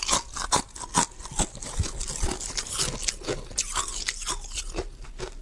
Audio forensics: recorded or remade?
recorded